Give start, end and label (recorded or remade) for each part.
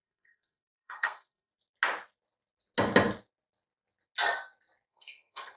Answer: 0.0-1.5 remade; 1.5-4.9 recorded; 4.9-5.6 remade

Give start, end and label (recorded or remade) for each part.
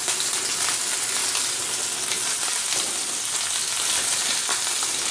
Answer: 0.0-5.1 recorded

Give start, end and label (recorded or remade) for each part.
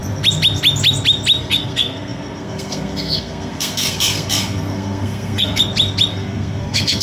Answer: 0.0-1.4 recorded; 1.4-5.6 remade; 5.6-6.1 recorded; 6.1-7.0 remade